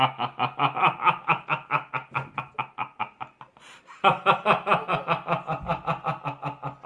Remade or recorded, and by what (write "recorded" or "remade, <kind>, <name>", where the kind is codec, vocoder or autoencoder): recorded